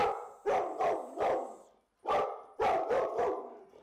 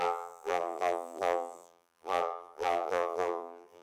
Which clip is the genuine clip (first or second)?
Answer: first